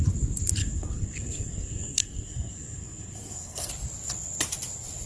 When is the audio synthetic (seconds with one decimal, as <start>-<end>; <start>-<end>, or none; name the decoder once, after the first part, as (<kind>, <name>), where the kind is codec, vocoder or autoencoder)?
0.6-3.7 (codec, SNAC)